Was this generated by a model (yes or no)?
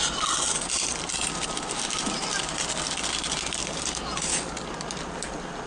no